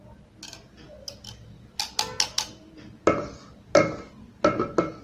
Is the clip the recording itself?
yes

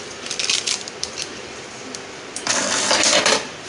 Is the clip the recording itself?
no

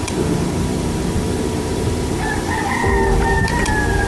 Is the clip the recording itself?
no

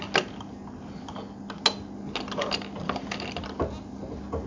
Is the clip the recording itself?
yes